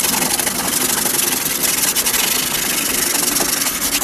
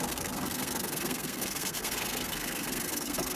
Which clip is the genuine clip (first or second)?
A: first